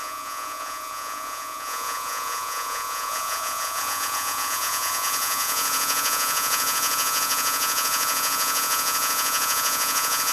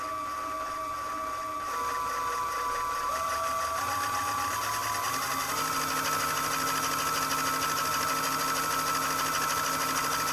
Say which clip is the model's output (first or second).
first